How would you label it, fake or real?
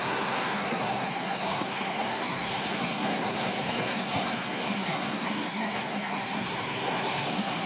fake